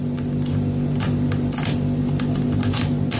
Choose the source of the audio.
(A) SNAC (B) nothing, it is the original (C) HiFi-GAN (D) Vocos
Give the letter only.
B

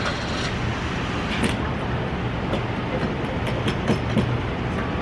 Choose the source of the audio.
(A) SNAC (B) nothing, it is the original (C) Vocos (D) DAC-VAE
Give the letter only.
B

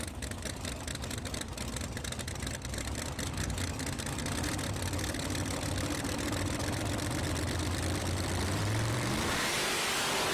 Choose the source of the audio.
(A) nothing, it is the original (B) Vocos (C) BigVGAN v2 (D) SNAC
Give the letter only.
C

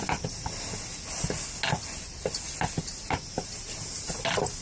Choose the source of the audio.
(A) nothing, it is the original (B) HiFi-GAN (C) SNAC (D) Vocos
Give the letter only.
A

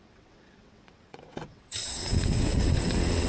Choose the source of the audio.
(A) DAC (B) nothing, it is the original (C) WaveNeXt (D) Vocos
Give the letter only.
C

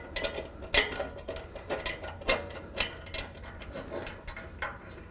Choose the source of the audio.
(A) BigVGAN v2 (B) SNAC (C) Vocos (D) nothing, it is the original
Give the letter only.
D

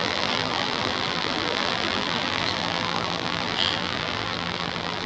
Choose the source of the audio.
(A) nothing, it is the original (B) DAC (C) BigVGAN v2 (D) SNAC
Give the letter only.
C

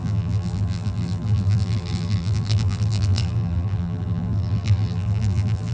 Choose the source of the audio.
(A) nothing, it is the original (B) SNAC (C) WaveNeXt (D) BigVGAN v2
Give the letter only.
D